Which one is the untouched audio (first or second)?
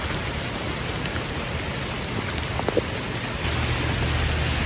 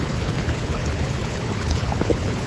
first